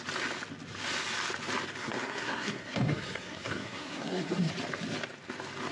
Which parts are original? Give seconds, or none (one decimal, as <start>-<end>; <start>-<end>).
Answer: 0.0-1.8; 4.5-5.7